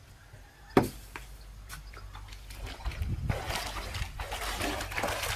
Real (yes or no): yes